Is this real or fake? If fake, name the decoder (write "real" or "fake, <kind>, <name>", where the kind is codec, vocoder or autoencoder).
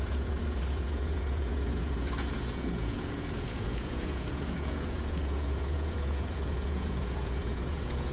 fake, vocoder, Vocos